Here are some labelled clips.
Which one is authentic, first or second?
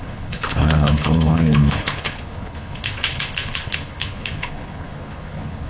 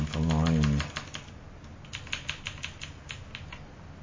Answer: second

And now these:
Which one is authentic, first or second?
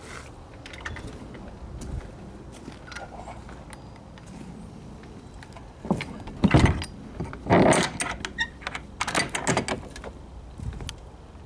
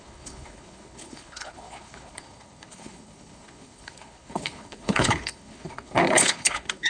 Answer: first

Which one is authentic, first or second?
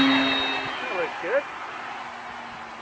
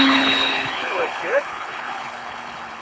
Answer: first